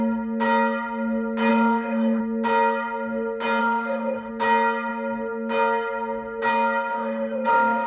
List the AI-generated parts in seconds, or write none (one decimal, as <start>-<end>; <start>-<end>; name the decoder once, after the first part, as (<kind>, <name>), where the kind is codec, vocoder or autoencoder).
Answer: 1.5-2.2 (autoencoder, DAC-VAE); 3.6-4.3; 6.9-7.9